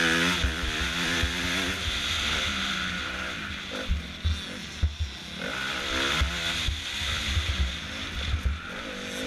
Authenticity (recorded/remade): recorded